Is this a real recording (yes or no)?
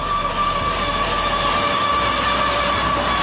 yes